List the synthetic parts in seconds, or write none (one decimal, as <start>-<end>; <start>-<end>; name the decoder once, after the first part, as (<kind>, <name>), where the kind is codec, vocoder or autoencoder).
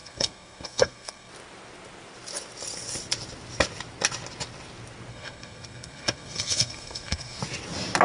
0.0-1.3 (codec, SNAC); 5.1-7.4